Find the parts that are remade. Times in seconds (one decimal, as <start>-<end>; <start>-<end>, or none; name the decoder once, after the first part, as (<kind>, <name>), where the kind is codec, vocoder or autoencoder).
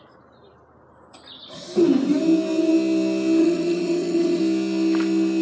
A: 3.4-4.4 (vocoder, HiFi-GAN)